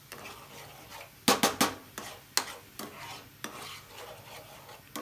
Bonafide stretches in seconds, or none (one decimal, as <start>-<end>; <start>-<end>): 0.0-5.0